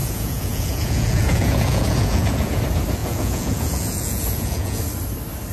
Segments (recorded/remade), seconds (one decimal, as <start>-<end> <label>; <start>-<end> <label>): 0.0-2.6 remade; 2.6-3.0 recorded; 3.0-4.8 remade; 4.8-5.5 recorded

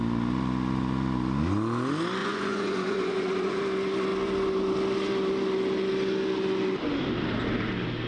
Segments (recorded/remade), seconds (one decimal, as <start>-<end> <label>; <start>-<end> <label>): 0.0-2.2 recorded; 2.2-3.6 remade; 3.6-8.1 recorded